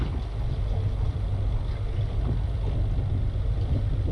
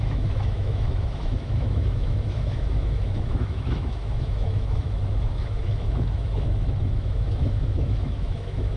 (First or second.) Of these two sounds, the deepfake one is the second